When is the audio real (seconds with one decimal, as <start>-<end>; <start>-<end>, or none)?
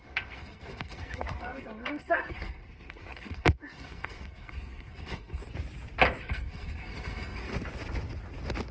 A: 5.4-6.2; 7.5-8.7